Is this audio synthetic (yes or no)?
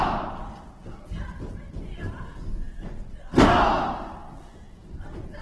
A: no